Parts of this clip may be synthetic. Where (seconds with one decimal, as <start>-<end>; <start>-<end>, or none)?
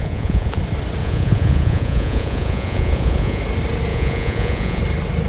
0.0-0.6; 1.0-3.4; 3.9-4.8